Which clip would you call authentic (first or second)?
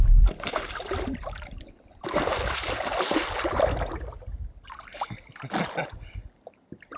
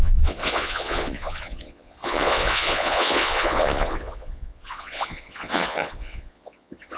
first